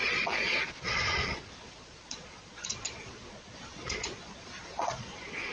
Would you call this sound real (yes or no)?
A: no